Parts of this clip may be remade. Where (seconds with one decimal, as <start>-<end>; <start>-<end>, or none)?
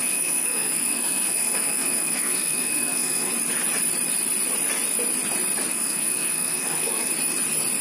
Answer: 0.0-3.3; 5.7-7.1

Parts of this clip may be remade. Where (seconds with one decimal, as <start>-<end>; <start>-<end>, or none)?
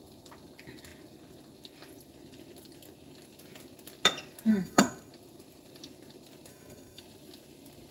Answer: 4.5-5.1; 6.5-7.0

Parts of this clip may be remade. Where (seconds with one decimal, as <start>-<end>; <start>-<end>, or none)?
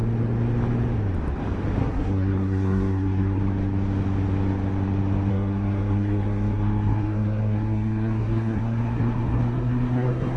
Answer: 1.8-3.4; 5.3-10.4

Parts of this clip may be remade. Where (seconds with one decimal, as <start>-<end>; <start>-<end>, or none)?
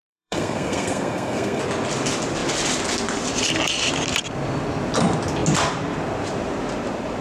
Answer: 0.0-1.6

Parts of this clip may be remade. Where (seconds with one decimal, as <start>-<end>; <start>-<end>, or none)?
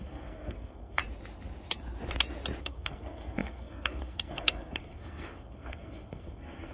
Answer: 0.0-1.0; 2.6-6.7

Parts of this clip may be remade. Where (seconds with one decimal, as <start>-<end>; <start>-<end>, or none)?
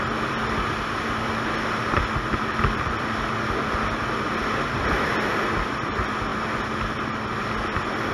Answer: none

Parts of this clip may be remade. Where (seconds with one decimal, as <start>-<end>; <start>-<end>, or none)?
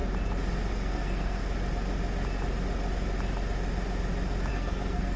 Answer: 0.7-1.4; 4.5-5.2